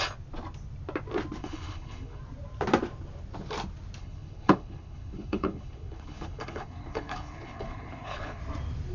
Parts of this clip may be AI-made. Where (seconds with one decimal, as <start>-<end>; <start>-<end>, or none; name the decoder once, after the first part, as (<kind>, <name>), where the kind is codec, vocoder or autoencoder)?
1.4-2.2 (codec, HILCodec); 4.0-8.4